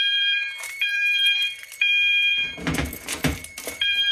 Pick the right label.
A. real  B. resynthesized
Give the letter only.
B